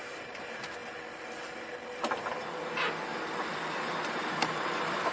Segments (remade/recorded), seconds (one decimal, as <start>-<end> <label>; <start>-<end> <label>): 0.0-0.8 recorded; 0.8-2.7 remade; 2.7-3.1 recorded; 3.1-5.1 remade